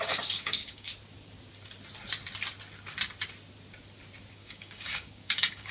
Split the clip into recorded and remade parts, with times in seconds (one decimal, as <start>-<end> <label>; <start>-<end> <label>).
0.0-0.9 remade; 0.9-4.3 recorded; 4.3-5.7 remade